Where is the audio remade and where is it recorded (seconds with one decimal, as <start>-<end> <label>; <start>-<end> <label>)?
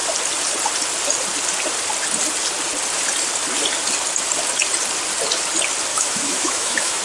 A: 0.0-5.9 recorded; 5.9-7.0 remade